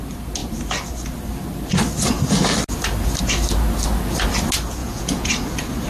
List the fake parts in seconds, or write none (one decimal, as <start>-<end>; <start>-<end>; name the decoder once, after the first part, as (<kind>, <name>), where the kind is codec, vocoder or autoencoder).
4.8-5.3 (vocoder, Vocos)